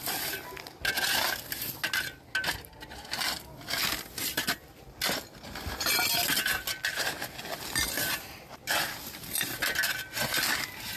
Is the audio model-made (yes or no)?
no